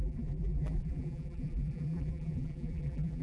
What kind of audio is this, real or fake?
fake